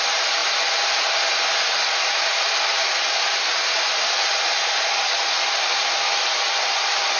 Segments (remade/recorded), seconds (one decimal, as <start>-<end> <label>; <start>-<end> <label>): 0.0-7.2 recorded